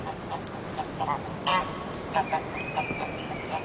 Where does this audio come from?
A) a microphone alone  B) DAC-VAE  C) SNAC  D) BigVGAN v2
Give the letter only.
A